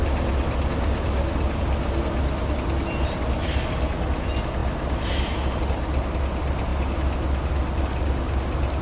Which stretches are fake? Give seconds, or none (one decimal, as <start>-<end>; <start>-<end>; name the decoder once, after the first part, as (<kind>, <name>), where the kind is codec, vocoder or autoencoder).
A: none